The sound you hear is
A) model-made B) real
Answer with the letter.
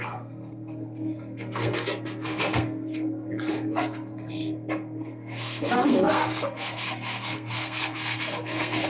A